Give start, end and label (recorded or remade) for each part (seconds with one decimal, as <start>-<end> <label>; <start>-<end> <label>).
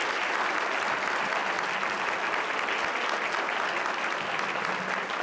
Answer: 0.0-0.5 recorded; 0.5-5.2 remade